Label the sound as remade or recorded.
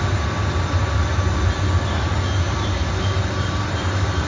recorded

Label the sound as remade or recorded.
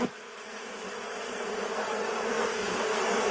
remade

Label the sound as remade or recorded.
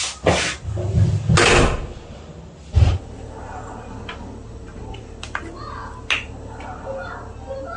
recorded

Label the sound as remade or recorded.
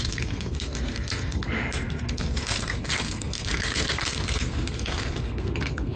remade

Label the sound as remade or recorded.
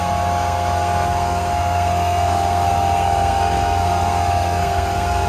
remade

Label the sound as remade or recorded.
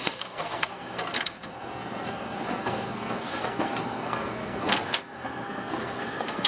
remade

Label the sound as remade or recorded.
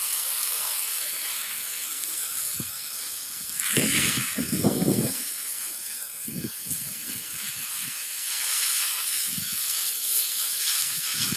remade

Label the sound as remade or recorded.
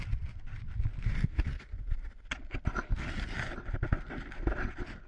recorded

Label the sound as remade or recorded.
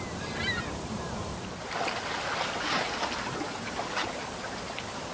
recorded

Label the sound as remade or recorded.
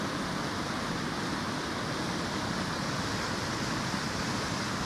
recorded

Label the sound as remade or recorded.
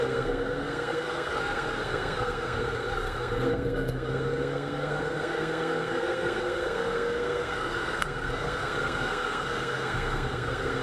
remade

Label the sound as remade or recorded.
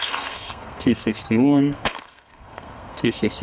remade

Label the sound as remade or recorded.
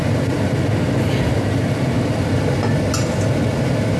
recorded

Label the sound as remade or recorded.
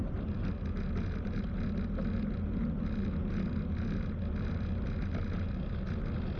recorded